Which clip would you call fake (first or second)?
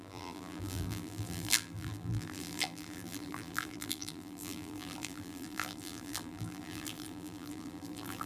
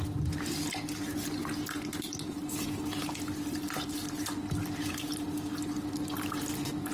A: first